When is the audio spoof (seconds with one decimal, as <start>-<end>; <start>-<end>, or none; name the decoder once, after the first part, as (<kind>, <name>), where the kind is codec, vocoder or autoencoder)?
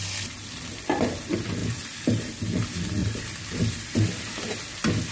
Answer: 1.6-2.6 (vocoder, BigVGAN v2); 3.0-3.7